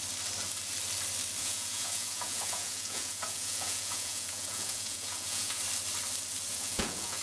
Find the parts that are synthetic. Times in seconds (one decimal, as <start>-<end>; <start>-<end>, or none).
1.4-5.6; 6.5-7.2